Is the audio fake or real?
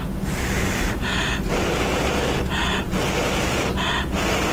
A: real